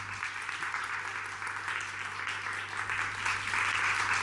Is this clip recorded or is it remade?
recorded